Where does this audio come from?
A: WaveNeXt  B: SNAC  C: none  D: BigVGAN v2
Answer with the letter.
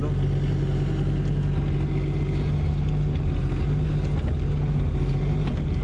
C